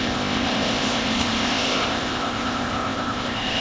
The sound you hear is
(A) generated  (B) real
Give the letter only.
A